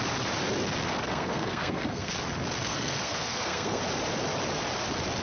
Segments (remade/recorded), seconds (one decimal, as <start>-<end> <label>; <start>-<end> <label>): 0.0-1.1 recorded; 1.1-2.1 remade; 2.1-2.6 recorded; 2.6-3.8 remade; 3.8-5.2 recorded